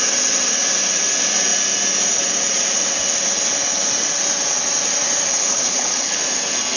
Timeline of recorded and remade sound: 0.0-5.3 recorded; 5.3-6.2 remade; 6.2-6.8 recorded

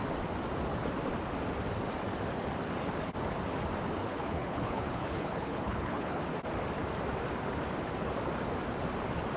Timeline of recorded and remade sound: 0.0-4.0 recorded; 4.0-6.2 remade; 6.2-9.4 recorded

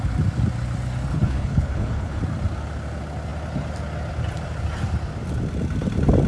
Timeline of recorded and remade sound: 0.0-1.1 recorded; 1.1-2.2 remade; 2.2-6.3 recorded

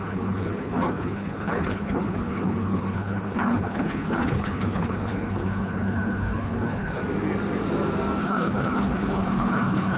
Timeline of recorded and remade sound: 0.0-7.0 remade; 7.0-8.2 recorded; 8.2-10.0 remade

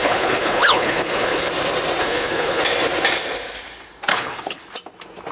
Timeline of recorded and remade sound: 0.0-1.5 remade; 1.5-2.0 recorded; 2.0-2.6 remade; 2.6-4.1 recorded; 4.1-4.6 remade; 4.6-5.3 recorded